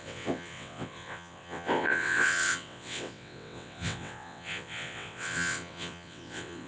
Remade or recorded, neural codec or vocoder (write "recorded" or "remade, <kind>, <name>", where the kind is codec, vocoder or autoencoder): remade, vocoder, WaveNeXt